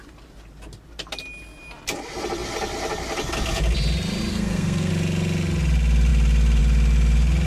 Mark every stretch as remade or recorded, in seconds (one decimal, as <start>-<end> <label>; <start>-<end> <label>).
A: 0.0-4.3 recorded; 4.3-4.9 remade; 4.9-7.5 recorded